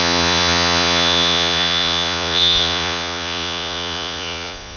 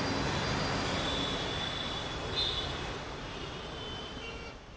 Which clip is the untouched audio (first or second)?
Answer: second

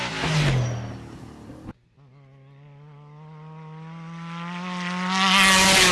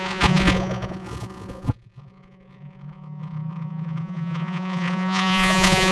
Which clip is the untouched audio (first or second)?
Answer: first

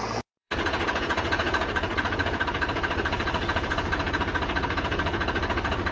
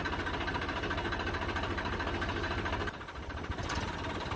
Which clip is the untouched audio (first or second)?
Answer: second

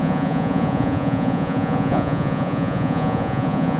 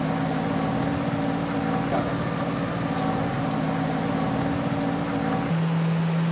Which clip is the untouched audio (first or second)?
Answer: second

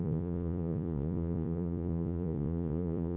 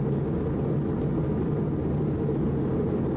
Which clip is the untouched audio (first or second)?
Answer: second